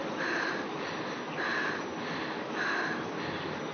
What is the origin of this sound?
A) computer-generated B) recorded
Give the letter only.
B